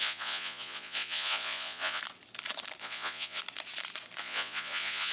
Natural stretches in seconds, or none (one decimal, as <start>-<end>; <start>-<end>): 2.0-2.8; 3.4-4.2